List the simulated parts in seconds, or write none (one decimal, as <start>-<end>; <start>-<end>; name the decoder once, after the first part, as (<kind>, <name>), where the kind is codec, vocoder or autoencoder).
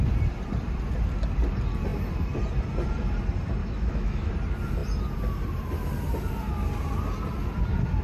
3.6-4.3 (autoencoder, DAC-VAE)